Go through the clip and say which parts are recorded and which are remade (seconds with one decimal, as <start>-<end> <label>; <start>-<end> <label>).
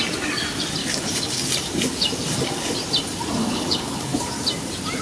0.0-0.8 recorded; 0.8-1.4 remade; 1.4-3.4 recorded; 3.4-4.2 remade; 4.2-5.0 recorded